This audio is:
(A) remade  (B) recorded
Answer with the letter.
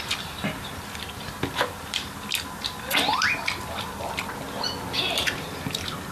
A